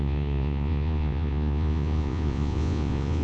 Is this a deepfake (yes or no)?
yes